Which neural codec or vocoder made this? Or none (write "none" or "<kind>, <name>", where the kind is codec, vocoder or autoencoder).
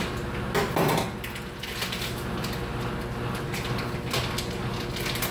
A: none